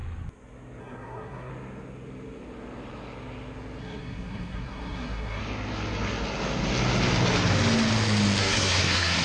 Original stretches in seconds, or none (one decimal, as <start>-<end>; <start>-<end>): 0.0-0.8; 1.5-3.8; 5.4-8.4